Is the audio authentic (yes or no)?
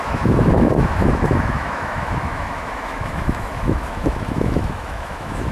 no